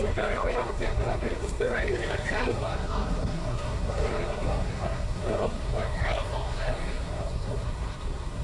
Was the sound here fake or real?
fake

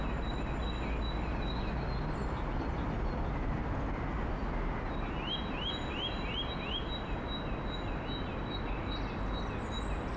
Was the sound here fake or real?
real